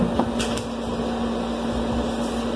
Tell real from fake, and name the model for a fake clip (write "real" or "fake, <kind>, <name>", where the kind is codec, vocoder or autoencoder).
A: real